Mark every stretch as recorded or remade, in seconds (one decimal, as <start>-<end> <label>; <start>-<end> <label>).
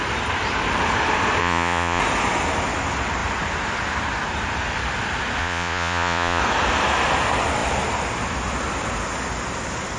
0.0-1.4 recorded; 1.4-2.0 remade; 2.0-5.4 recorded; 5.4-6.4 remade; 6.4-10.0 recorded